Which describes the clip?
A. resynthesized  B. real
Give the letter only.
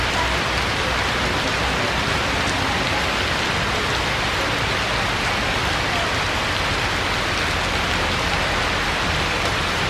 B